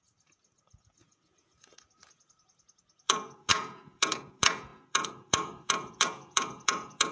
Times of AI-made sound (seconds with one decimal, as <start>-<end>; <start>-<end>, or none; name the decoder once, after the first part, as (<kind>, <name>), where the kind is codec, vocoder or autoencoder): 0.0-7.1 (vocoder, Vocos)